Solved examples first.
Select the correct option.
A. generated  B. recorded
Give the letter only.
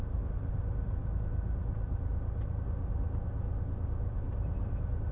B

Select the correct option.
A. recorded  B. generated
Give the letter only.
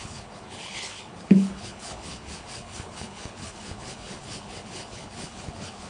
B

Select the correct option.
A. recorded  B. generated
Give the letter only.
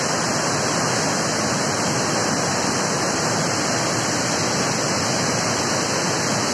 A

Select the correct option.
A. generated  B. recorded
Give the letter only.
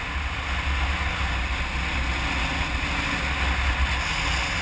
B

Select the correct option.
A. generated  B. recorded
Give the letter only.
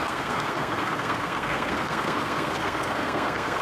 A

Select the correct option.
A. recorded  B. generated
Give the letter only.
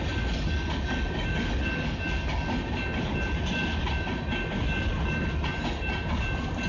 A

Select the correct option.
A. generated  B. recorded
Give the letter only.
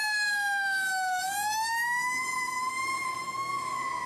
A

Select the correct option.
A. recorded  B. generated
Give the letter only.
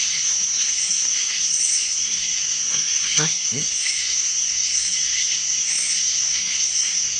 B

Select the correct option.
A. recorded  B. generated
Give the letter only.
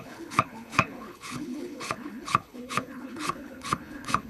B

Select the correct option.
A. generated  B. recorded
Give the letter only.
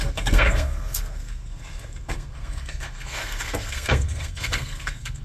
A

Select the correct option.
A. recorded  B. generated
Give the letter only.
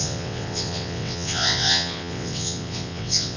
B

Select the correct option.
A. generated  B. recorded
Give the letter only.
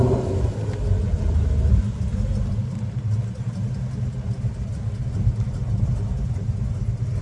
B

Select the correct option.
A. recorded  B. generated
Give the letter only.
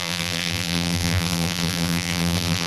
B